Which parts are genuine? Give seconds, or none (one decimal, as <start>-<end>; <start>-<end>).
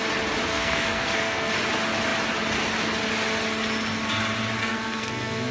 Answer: 0.0-0.5; 1.5-4.6